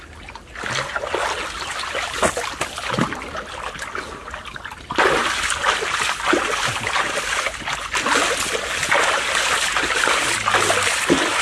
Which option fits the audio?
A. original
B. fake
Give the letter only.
A